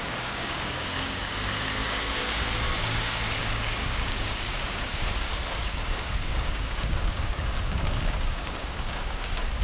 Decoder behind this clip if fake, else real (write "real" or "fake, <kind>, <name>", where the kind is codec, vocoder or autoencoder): fake, codec, DAC